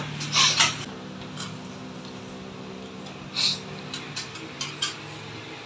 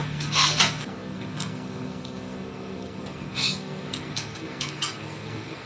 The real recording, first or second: first